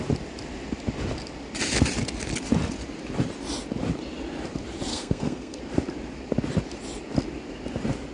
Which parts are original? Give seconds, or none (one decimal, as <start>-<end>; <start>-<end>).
0.0-4.9; 5.6-8.1

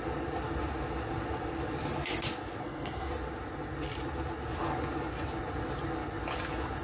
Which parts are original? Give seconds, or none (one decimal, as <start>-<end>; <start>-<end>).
0.0-2.6; 3.1-6.8

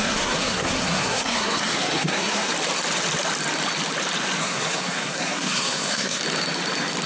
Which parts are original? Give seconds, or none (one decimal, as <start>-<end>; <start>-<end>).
2.5-4.4; 6.2-7.1

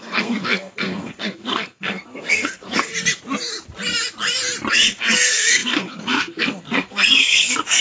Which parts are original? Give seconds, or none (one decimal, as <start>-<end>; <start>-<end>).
2.9-4.7

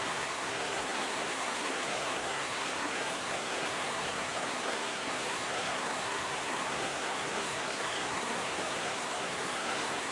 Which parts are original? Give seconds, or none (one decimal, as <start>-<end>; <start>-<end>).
none